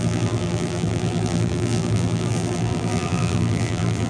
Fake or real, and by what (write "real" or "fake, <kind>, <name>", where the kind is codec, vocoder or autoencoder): fake, vocoder, BigVGAN v2